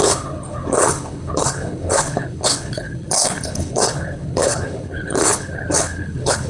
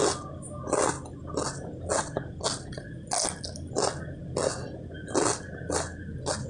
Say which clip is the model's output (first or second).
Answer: first